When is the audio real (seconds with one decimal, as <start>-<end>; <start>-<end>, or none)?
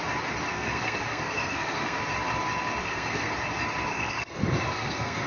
0.0-0.5; 2.0-2.8; 3.3-3.9